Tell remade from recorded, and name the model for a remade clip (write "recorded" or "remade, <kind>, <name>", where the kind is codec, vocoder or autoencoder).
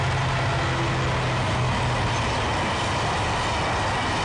recorded